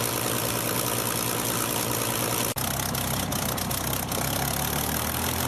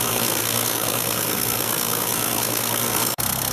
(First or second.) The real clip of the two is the first